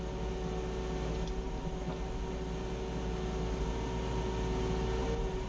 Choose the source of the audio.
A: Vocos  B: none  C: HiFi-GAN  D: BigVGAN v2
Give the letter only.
B